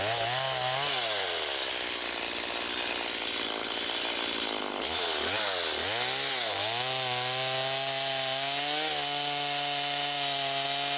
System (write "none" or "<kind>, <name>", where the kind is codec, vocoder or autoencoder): none